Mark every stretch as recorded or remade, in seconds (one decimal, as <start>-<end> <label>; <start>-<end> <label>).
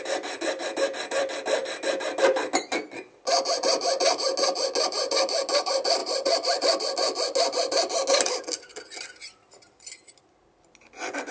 0.0-11.3 recorded